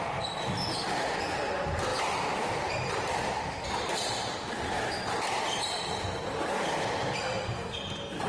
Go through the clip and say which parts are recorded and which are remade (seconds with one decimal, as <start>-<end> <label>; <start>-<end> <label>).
0.0-8.3 recorded

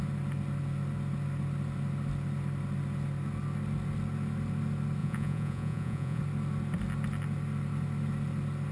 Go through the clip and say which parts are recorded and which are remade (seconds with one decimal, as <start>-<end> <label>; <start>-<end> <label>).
0.0-5.0 recorded; 5.0-6.2 remade; 6.2-8.7 recorded